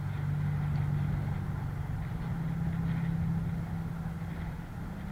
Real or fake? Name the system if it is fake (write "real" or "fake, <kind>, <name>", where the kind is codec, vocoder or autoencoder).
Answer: real